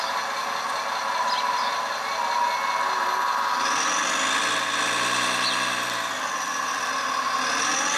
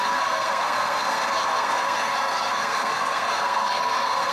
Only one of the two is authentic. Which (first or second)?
first